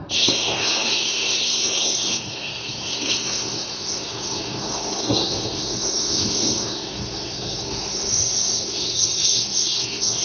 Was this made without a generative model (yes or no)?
no